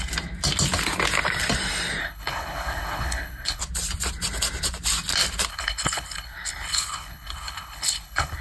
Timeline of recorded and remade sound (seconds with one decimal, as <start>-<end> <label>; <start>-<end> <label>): 0.0-2.0 recorded; 2.0-3.6 remade; 3.6-5.5 recorded; 5.5-8.4 remade